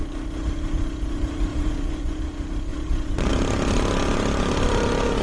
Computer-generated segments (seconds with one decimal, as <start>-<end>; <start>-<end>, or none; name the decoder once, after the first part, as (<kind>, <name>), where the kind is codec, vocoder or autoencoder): 1.5-2.2 (vocoder, Vocos); 2.7-3.3